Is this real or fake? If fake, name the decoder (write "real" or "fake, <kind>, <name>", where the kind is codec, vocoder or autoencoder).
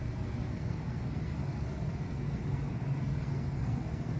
fake, codec, SNAC